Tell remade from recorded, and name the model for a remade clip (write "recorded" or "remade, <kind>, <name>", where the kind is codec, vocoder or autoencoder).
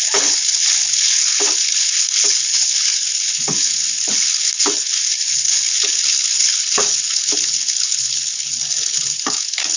remade, codec, HILCodec